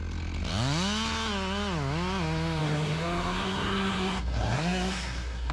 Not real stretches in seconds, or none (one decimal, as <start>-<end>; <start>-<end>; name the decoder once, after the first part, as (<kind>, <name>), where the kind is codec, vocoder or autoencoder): 2.6-5.5 (codec, SNAC)